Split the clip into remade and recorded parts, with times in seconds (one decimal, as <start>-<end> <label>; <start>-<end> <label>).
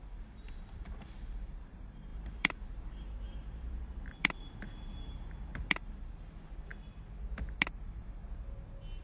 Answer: 0.0-6.7 remade; 6.7-7.8 recorded; 7.8-8.2 remade; 8.2-9.0 recorded